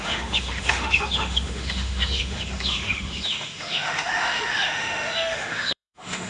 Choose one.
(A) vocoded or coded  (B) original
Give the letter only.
A